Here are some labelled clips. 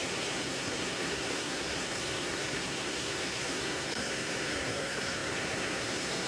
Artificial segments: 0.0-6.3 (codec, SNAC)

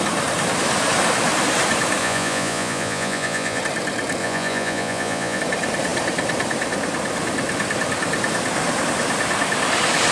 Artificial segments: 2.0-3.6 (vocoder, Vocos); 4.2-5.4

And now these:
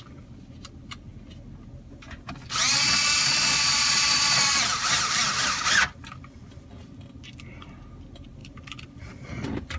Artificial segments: 4.5-6.4 (vocoder, BigVGAN v2); 8.4-9.8

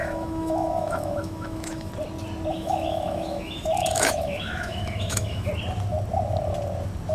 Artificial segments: 0.0-1.9 (autoencoder, DAC-VAE); 2.5-5.5

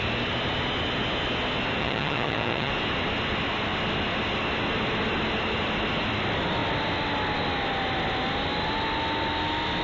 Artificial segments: 1.8-2.7 (vocoder, HiFi-GAN)

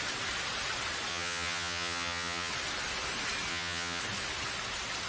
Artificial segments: 1.1-2.5 (vocoder, HiFi-GAN); 3.5-4.0

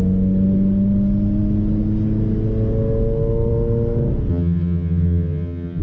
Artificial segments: 4.3-5.8 (vocoder, HiFi-GAN)